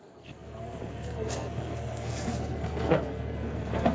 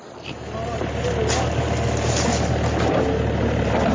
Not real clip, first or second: first